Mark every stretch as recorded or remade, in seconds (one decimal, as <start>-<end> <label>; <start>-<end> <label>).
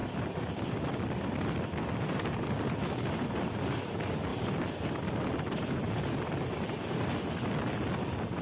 0.0-8.4 recorded